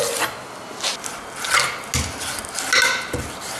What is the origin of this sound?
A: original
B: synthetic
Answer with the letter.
A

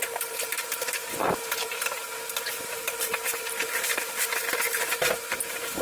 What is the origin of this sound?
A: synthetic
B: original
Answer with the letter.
A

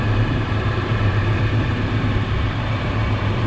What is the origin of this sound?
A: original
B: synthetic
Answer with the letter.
B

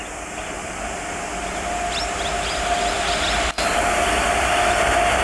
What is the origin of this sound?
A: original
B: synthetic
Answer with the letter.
A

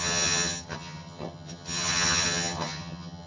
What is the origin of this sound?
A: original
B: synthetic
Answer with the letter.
B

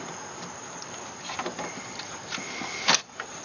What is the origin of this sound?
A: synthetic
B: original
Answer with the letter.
B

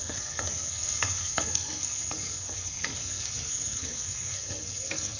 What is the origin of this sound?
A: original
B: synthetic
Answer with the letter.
B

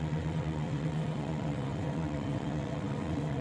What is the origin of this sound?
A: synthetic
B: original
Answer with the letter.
A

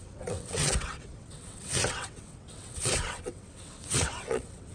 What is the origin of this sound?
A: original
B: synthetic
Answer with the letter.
B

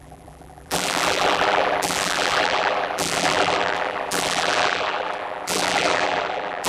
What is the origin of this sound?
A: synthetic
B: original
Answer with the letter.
A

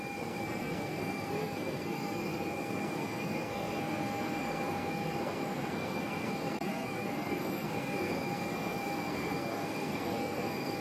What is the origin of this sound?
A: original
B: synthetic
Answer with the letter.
B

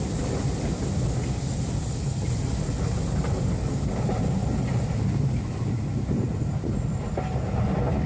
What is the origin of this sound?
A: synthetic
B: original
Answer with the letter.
B